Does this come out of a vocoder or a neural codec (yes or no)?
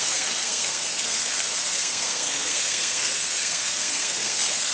yes